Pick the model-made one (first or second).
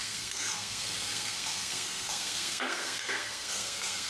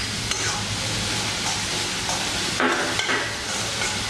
first